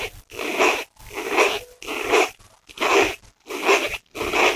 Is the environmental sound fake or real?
real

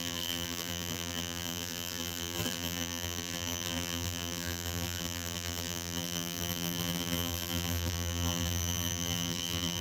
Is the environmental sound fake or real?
fake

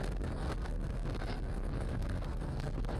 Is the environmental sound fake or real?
fake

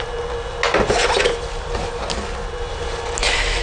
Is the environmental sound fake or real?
real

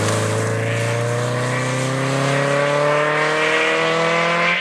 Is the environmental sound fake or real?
real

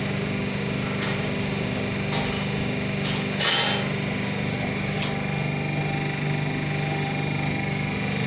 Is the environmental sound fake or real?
real